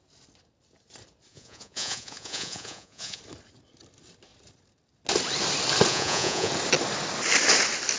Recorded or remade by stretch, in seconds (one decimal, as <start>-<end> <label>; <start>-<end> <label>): 0.0-1.3 recorded; 1.3-3.2 remade; 3.2-5.9 recorded; 5.9-6.5 remade; 6.5-8.0 recorded